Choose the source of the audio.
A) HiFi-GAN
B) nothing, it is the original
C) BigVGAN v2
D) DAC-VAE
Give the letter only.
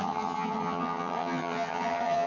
A